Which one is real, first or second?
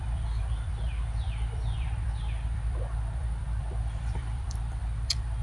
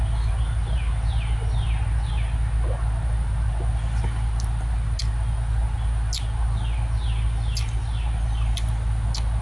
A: second